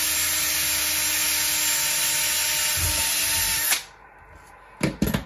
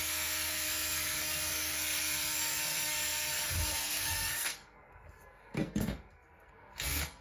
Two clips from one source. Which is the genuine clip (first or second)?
first